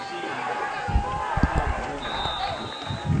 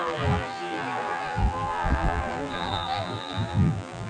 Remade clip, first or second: second